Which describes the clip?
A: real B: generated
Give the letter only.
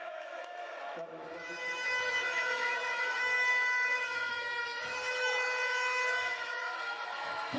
B